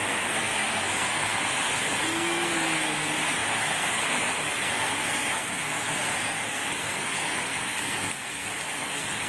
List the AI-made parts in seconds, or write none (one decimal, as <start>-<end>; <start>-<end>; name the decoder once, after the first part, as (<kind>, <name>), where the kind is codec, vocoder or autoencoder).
0.0-9.3 (codec, SNAC)